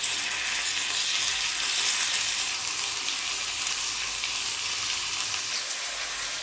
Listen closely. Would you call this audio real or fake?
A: real